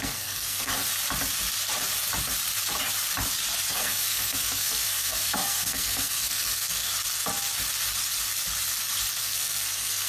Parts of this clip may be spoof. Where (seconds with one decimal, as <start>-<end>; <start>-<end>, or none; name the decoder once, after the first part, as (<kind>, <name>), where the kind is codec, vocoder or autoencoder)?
0.0-0.9 (codec, SNAC); 3.7-6.9; 9.2-10.1